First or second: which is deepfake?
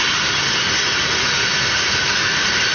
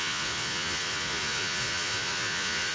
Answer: second